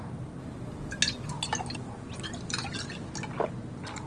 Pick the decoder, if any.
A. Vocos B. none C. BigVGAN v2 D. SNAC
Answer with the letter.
B